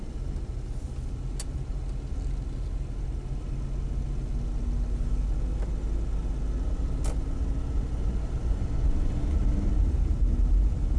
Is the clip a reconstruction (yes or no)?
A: no